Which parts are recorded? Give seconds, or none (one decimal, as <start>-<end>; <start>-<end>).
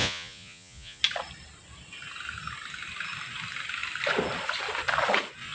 1.0-5.5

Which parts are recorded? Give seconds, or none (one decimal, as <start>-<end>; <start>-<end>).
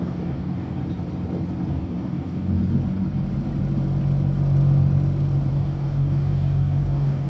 0.8-1.7; 2.6-5.5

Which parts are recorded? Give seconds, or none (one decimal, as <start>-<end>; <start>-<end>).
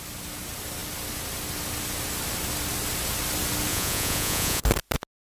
0.0-3.7; 4.6-5.2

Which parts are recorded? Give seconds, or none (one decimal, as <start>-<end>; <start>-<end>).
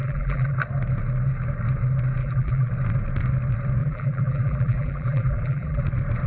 0.6-2.2; 2.7-3.8; 5.8-6.3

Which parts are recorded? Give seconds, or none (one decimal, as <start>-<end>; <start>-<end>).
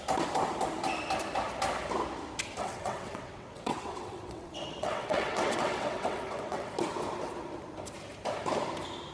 0.0-2.6; 6.7-9.1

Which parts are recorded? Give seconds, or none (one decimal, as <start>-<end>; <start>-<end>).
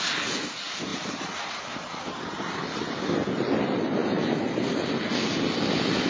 0.0-6.1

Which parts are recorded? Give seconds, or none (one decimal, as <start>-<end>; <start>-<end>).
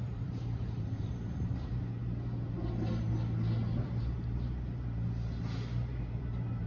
2.0-6.0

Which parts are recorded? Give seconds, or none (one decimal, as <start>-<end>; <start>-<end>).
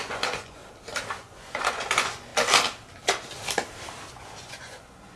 0.6-1.2; 2.3-4.1